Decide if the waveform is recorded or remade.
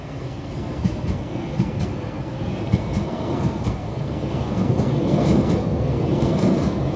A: remade